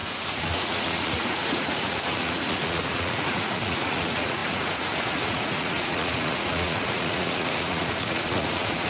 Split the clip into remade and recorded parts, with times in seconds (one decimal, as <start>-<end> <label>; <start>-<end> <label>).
0.0-8.9 remade